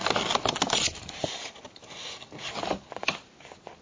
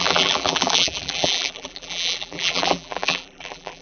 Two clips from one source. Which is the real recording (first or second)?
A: first